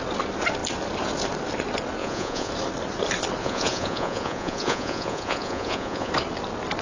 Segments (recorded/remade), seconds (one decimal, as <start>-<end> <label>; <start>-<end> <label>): 0.0-2.0 recorded; 2.0-2.5 remade; 2.5-3.4 recorded; 3.4-6.1 remade; 6.1-6.8 recorded